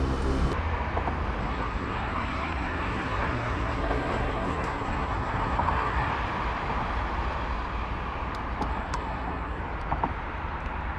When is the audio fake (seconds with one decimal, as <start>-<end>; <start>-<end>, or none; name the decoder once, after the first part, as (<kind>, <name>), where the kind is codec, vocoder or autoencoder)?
1.4-6.1 (codec, SNAC); 8.7-9.6